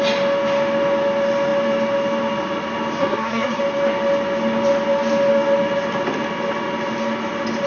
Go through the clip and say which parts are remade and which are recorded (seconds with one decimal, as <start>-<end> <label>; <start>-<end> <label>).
0.0-3.0 recorded; 3.0-3.6 remade; 3.6-7.7 recorded

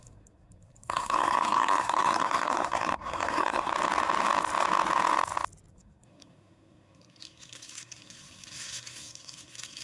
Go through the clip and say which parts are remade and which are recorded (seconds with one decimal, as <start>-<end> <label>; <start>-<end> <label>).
0.0-3.7 remade; 3.7-5.7 recorded; 5.7-9.8 remade

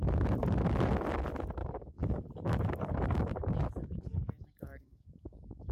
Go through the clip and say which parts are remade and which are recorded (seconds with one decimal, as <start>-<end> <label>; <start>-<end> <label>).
0.0-1.6 recorded; 1.6-3.4 remade; 3.4-4.1 recorded; 4.1-5.7 remade

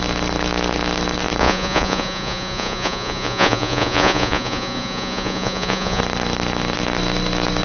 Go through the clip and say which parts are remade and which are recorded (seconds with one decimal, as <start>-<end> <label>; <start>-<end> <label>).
0.0-1.4 recorded; 1.4-6.0 remade; 6.0-7.6 recorded

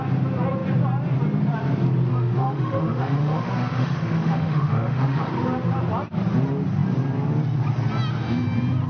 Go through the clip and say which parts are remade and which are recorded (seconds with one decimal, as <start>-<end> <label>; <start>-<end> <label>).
0.0-2.1 recorded; 2.1-5.3 remade; 5.3-8.9 recorded

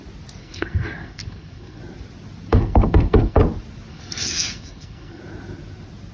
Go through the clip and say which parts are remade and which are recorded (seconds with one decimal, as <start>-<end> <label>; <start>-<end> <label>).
0.0-0.4 recorded; 0.4-1.8 remade; 1.8-2.5 recorded; 2.5-3.4 remade; 3.4-3.9 recorded; 3.9-5.2 remade; 5.2-6.1 recorded

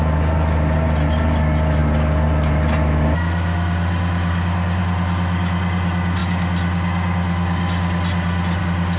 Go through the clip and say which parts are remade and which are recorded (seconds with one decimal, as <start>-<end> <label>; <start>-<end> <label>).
0.0-9.0 recorded

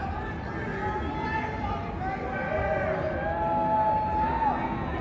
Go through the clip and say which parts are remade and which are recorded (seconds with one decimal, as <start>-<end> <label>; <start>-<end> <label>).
0.0-5.0 recorded